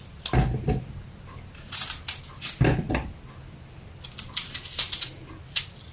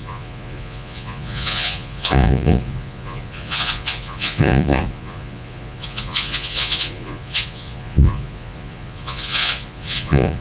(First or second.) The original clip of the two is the first